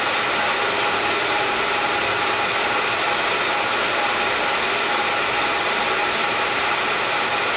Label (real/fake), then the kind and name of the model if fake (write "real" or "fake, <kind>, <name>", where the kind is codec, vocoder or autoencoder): real